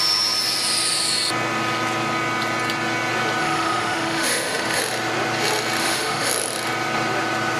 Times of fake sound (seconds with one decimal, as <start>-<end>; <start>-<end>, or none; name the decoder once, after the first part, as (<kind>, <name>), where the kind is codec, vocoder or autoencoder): 3.4-4.8 (autoencoder, DAC-VAE); 5.8-6.3